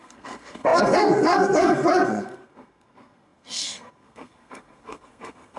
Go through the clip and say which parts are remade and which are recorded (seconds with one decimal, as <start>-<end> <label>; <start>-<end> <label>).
0.0-5.6 remade